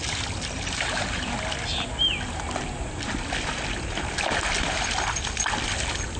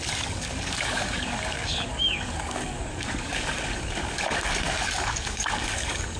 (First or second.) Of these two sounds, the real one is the first